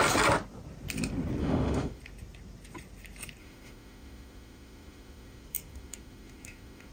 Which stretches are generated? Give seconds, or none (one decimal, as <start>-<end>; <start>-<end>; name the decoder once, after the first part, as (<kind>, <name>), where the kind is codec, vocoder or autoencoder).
1.4-2.0 (autoencoder, DAC-VAE); 3.4-6.9